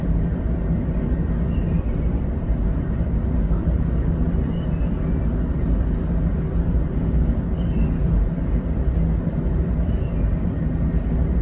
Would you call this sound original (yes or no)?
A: yes